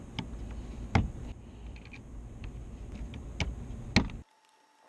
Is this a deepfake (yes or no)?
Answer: no